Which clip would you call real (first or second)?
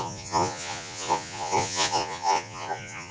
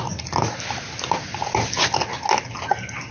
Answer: second